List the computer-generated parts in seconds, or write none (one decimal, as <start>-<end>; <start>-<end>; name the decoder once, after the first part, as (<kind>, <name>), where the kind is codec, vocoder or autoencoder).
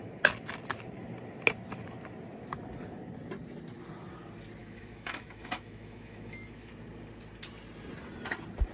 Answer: 4.6-6.7 (autoencoder, DAC-VAE)